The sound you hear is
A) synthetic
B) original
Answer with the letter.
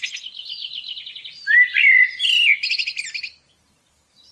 B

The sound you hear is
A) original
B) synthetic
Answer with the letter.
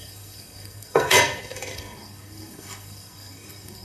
B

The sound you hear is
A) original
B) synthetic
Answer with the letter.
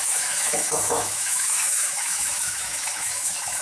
B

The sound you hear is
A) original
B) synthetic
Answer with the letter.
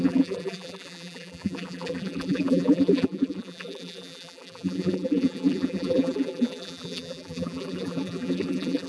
B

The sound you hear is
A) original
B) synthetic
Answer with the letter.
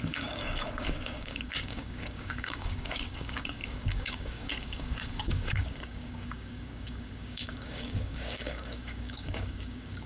B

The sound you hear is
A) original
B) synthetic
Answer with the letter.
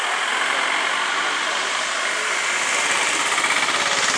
A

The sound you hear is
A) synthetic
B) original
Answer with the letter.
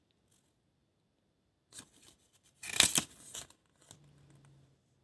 B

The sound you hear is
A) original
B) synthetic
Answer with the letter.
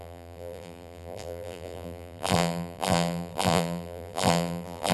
B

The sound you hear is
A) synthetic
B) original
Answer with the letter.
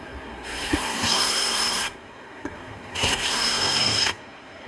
A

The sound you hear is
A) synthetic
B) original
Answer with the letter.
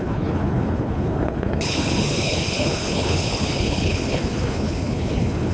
A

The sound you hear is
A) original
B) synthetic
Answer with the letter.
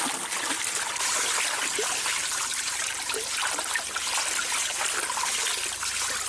A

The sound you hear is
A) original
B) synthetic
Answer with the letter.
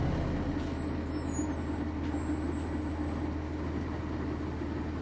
A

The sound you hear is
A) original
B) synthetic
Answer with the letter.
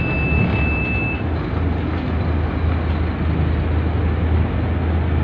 A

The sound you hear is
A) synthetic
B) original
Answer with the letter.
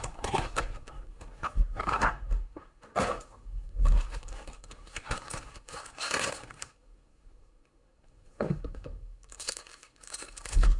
A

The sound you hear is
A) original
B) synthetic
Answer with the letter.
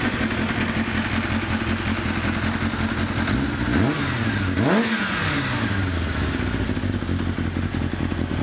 A